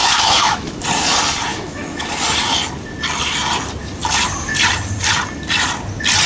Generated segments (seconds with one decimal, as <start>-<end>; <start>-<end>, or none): 0.0-0.8; 1.5-2.1